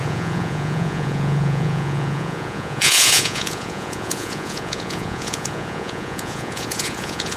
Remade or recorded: remade